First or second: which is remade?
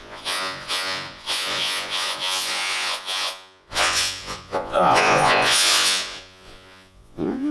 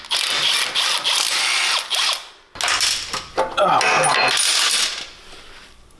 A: first